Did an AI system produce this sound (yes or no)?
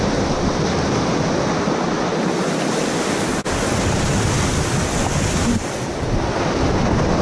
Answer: no